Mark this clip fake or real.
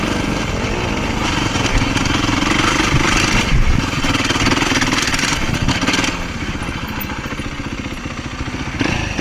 real